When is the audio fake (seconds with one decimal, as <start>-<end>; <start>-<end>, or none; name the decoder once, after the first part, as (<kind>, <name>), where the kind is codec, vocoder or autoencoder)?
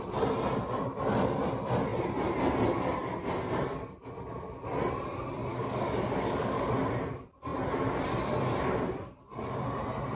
5.5-6.7 (codec, DAC)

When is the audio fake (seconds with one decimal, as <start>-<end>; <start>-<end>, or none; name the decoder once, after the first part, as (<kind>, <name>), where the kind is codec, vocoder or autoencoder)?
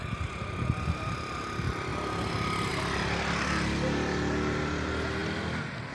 none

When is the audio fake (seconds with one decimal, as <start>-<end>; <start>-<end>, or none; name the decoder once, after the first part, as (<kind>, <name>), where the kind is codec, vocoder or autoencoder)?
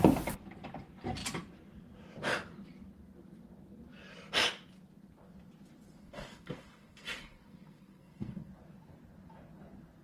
6.0-8.5 (codec, SNAC)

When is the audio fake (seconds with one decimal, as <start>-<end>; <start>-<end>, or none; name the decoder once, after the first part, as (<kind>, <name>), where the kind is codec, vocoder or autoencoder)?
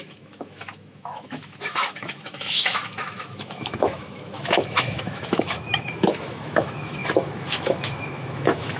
0.0-8.8 (autoencoder, DAC-VAE)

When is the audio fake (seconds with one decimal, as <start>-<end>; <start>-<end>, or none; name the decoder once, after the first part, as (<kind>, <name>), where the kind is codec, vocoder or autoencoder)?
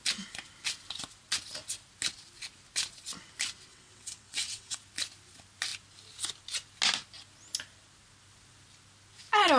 3.7-4.8 (vocoder, WaveNeXt)